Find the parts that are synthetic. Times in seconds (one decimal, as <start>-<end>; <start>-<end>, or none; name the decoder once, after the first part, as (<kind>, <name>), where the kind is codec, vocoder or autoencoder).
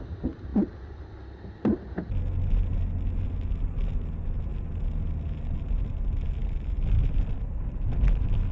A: none